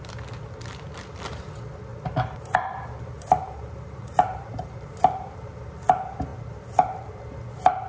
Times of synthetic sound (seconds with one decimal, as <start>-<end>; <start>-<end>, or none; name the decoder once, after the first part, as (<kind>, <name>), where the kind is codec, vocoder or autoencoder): 1.9-5.6 (vocoder, BigVGAN v2)